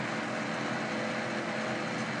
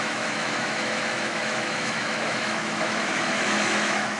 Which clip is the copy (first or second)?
second